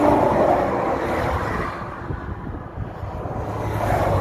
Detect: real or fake real